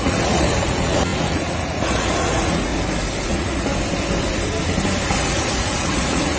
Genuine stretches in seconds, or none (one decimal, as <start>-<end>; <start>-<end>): 2.7-3.2; 3.7-5.2